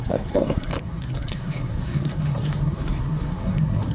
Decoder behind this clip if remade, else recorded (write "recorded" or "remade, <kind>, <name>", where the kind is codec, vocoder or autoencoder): remade, codec, SNAC